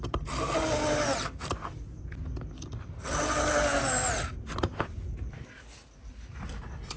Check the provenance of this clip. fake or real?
real